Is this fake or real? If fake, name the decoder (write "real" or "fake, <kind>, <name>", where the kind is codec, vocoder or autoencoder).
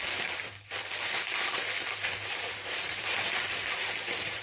fake, vocoder, BigVGAN v2